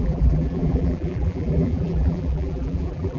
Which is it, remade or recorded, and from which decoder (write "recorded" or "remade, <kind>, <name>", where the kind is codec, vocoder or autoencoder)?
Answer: remade, vocoder, BigVGAN v2